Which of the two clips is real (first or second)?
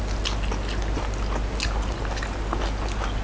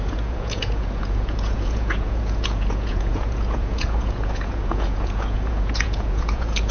first